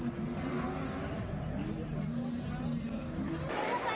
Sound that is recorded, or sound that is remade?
recorded